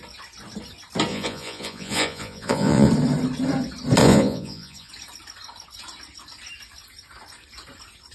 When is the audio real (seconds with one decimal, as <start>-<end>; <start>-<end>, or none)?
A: 0.0-1.1; 2.9-4.0; 4.9-8.1